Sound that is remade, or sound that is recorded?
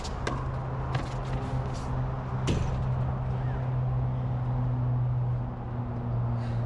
recorded